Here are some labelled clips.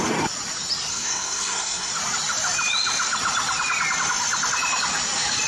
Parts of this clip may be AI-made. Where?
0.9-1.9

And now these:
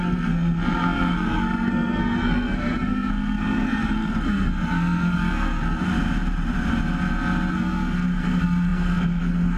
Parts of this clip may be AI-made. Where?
0.0-5.9; 7.5-9.6

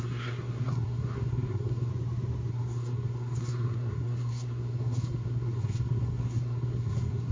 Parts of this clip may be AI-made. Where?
0.0-1.9; 2.5-7.3

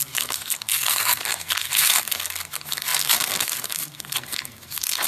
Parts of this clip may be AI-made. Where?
0.0-5.1

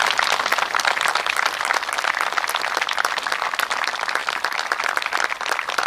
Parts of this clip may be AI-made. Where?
none